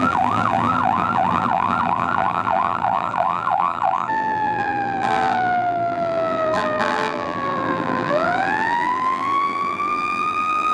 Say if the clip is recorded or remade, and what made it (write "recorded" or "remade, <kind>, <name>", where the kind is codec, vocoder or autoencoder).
remade, vocoder, BigVGAN v2